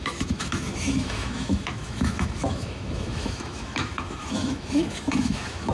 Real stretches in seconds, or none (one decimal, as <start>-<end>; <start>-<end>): none

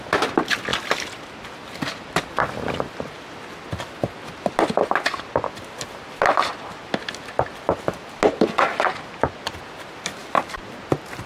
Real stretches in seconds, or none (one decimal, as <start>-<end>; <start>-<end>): 0.0-0.7; 2.7-11.3

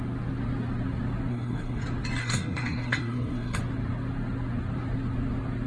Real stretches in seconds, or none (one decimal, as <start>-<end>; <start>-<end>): 0.0-1.3; 1.8-2.2; 3.6-5.7

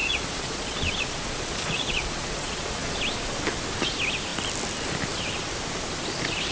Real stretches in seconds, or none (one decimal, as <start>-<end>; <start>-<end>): 3.0-6.5

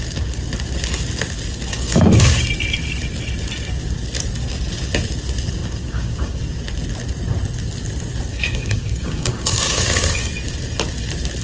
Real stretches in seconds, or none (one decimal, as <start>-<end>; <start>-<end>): 0.0-1.7; 2.4-5.6; 6.4-8.3; 10.3-11.4

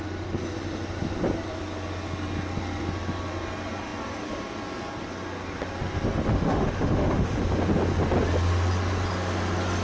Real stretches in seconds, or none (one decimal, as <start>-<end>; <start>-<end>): 0.0-6.3; 7.4-9.8